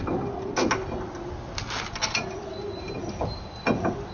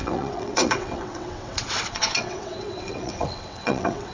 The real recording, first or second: first